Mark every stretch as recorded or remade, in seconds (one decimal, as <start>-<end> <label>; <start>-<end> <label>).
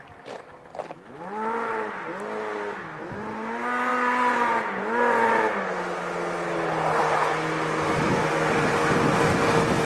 0.0-9.8 recorded